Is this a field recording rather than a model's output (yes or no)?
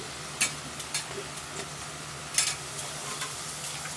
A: yes